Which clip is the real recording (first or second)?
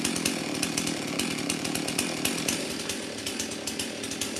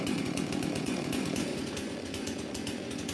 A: first